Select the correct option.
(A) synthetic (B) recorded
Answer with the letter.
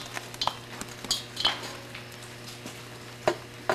B